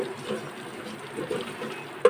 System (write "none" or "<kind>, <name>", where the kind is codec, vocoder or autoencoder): none